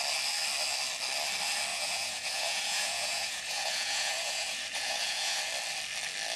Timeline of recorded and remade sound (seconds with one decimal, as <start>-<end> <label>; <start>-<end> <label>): 0.0-1.7 recorded; 1.7-5.5 remade; 5.5-6.4 recorded